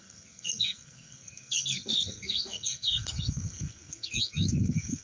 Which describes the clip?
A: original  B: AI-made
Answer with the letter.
B